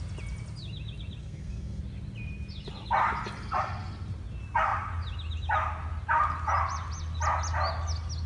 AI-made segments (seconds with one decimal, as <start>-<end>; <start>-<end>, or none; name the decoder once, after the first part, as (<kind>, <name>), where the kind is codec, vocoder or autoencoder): 1.2-1.8 (codec, SNAC)